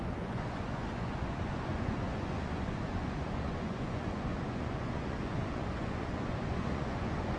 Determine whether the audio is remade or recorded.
remade